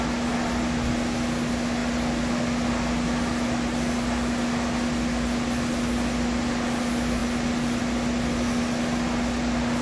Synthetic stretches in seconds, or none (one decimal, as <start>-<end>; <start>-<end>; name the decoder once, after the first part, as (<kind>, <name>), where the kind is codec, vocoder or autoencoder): none